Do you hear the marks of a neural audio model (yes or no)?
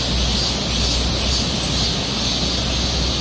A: no